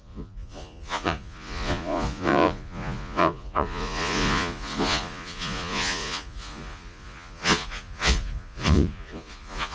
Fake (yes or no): yes